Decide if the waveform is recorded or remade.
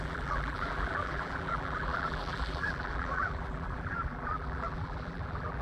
remade